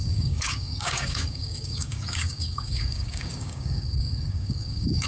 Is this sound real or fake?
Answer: fake